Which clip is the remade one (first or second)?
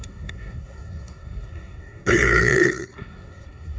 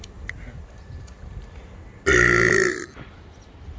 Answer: first